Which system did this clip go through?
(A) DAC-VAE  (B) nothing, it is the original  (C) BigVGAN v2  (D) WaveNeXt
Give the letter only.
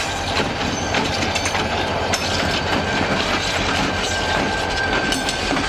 C